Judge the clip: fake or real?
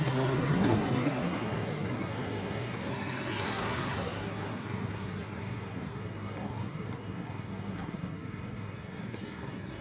fake